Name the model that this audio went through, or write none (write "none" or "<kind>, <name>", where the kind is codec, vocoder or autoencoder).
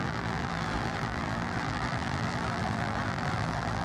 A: vocoder, BigVGAN v2